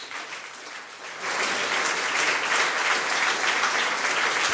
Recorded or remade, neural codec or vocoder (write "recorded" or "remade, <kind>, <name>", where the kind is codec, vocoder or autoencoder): recorded